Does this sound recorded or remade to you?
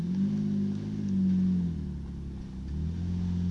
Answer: recorded